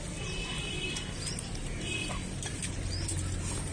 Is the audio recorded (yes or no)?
yes